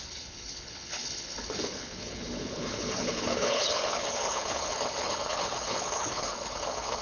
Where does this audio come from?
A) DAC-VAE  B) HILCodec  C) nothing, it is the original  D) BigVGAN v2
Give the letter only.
B